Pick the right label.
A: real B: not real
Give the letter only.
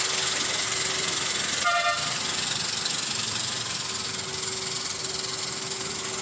A